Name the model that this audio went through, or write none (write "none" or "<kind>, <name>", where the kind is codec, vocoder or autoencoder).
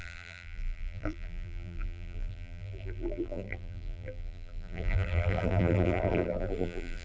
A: vocoder, BigVGAN v2